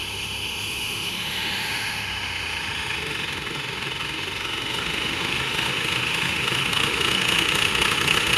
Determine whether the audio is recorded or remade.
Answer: remade